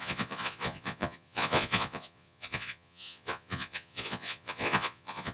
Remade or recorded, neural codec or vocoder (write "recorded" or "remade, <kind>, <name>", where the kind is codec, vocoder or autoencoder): remade, vocoder, Vocos